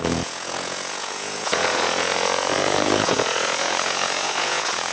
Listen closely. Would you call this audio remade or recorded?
remade